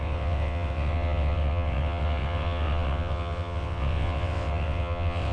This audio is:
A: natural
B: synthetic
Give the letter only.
B